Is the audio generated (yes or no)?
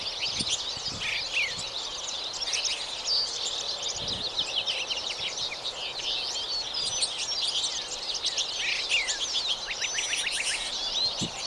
no